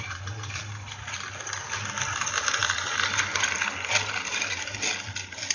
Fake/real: real